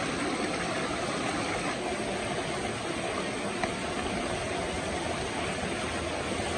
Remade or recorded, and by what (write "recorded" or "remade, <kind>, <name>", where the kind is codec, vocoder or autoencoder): recorded